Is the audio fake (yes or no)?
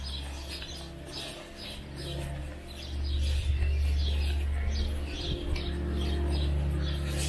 no